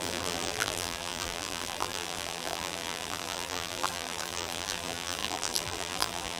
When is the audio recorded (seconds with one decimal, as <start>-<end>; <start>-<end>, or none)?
none